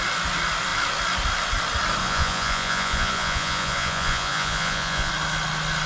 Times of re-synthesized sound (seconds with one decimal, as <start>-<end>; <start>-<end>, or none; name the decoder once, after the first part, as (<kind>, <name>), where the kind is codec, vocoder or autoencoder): 2.0-5.1 (vocoder, Vocos)